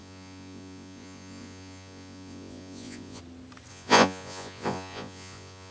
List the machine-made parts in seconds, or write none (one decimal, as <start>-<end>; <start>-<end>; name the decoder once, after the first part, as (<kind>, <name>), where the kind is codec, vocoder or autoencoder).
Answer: 0.0-3.2 (vocoder, Vocos); 3.7-5.7